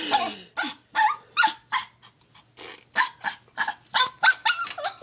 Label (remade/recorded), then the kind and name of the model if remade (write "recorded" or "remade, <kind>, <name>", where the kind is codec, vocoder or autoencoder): recorded